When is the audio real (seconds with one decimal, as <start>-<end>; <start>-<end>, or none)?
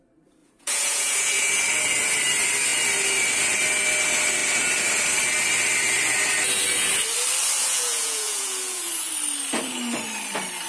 0.0-0.4; 1.6-7.6; 9.1-10.7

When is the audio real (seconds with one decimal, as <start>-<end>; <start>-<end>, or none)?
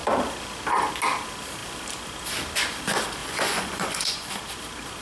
0.0-3.2; 4.3-5.0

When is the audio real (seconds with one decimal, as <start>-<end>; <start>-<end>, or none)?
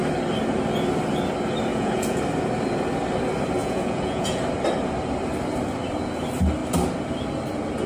0.0-1.7; 2.2-3.6; 4.4-7.9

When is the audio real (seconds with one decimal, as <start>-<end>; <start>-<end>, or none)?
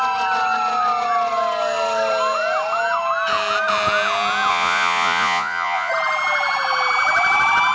0.0-4.5; 5.9-7.7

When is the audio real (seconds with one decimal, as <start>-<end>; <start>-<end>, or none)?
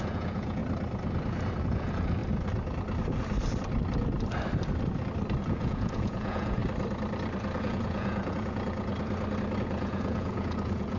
0.6-1.6; 2.2-5.4; 6.6-7.6; 8.9-9.6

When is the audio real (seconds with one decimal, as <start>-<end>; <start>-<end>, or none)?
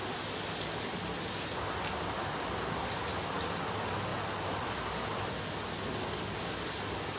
0.0-7.2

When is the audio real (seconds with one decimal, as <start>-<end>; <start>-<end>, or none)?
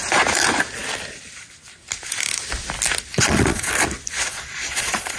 0.0-3.1; 3.7-4.3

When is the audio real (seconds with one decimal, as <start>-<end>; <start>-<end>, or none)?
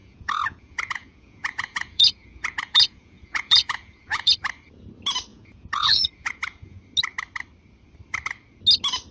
4.3-5.3; 6.8-9.1